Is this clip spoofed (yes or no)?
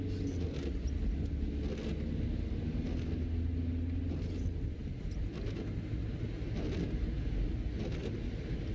no